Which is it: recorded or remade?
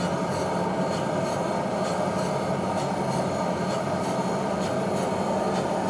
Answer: recorded